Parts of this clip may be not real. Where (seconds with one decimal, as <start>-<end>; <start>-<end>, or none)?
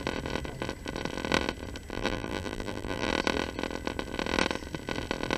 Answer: 1.9-3.1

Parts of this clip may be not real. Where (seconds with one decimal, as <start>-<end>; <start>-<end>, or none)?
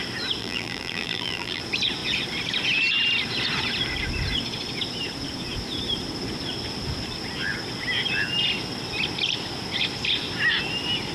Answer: 0.4-1.6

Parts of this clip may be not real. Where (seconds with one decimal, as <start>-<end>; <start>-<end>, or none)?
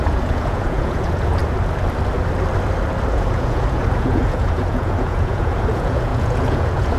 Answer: 0.0-1.4; 3.1-7.0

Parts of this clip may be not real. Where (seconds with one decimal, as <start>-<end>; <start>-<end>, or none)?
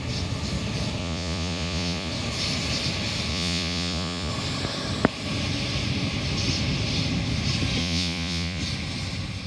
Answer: 1.0-2.1; 3.3-4.3; 7.8-8.6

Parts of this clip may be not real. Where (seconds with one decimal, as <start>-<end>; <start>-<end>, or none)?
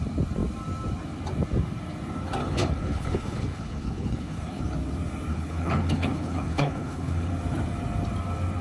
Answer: 2.4-4.6; 5.3-7.3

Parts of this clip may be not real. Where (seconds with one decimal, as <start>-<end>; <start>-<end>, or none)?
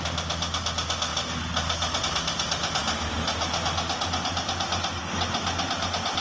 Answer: none